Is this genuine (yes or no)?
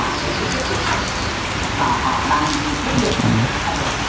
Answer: yes